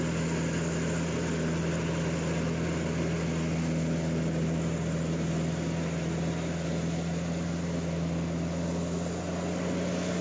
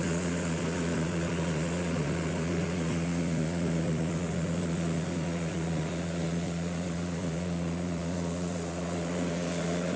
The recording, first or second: first